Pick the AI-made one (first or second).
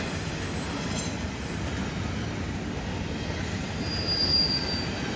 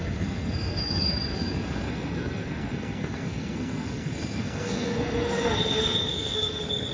second